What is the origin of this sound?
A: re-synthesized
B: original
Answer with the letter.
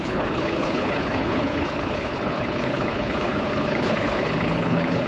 A